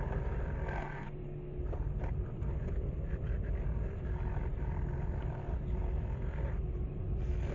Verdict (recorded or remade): recorded